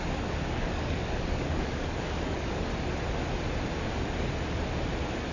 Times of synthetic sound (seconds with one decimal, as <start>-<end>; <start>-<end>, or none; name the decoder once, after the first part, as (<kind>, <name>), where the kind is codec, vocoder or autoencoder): 0.0-2.7 (codec, DAC)